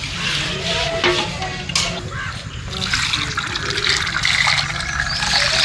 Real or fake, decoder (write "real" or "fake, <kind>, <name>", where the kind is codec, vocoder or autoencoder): real